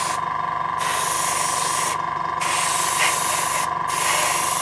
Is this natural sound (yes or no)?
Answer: yes